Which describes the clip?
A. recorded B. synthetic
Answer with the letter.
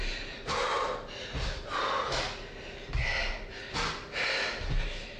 A